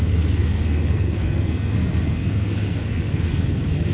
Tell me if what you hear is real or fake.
fake